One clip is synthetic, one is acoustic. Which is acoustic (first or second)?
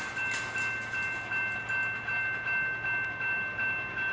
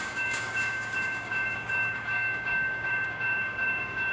first